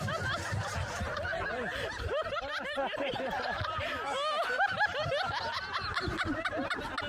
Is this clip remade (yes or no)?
no